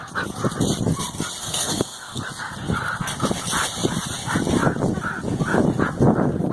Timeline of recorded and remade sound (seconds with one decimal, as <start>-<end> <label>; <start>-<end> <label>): 0.0-1.4 recorded; 1.4-2.2 remade; 2.2-6.5 recorded

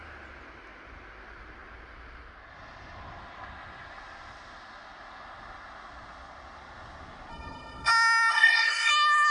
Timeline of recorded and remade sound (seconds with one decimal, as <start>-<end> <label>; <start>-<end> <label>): 0.0-7.3 recorded; 7.3-7.9 remade; 7.9-8.3 recorded; 8.3-8.9 remade; 8.9-9.3 recorded

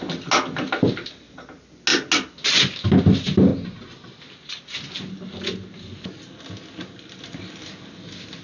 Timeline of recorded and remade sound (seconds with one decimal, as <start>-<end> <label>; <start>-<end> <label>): 0.0-8.4 recorded